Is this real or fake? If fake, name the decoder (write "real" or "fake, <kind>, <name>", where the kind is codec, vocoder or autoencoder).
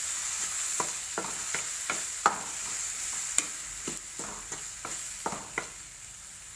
real